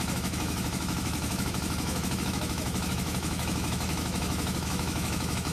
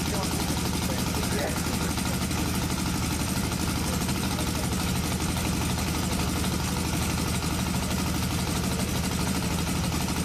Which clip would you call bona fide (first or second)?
second